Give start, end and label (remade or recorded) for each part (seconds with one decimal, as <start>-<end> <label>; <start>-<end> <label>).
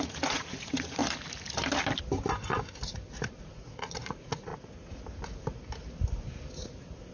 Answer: 0.0-1.0 remade; 1.0-3.4 recorded; 3.4-4.5 remade; 4.5-7.1 recorded